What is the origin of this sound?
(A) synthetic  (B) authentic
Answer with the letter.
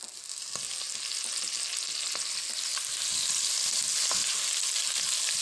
B